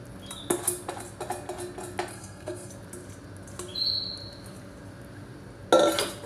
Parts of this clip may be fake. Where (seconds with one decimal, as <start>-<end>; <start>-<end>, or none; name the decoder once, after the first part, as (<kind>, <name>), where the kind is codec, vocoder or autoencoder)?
2.1-2.7 (codec, SNAC)

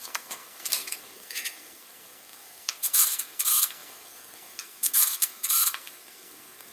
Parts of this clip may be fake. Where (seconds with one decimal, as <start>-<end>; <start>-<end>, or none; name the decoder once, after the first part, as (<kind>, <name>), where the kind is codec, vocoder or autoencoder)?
0.0-6.7 (codec, SNAC)

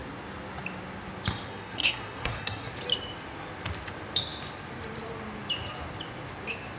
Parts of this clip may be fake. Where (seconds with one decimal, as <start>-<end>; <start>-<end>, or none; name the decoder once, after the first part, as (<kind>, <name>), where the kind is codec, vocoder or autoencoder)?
1.5-2.7 (codec, SNAC)